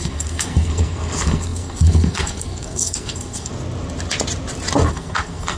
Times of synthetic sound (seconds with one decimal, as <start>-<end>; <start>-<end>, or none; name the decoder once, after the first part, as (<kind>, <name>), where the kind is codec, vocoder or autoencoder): 0.0-3.5 (codec, SNAC); 4.9-5.6